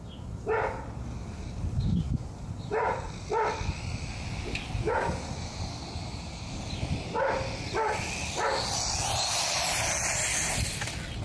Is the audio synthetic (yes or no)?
no